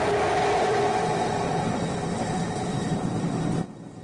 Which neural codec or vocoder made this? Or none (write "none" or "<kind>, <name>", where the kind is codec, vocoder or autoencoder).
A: none